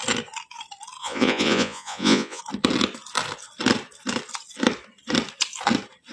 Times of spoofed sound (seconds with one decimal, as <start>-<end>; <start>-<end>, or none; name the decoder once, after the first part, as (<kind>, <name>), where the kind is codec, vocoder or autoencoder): 1.0-2.4 (vocoder, Vocos)